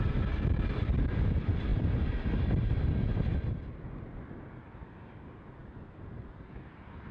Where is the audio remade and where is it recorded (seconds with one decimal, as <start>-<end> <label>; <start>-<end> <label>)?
0.0-7.1 recorded